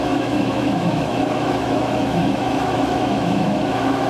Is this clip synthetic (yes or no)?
yes